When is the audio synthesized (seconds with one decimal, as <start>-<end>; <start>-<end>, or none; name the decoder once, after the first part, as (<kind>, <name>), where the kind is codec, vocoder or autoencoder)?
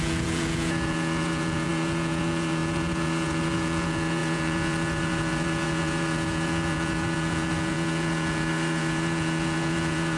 0.0-10.2 (vocoder, Vocos)